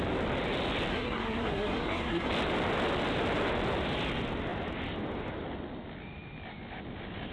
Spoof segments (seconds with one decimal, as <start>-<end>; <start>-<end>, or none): 0.9-2.3